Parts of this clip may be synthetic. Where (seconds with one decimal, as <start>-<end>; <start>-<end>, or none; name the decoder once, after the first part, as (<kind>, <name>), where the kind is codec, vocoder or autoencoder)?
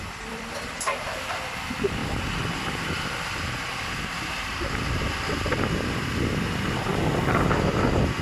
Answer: 0.0-8.2 (vocoder, BigVGAN v2)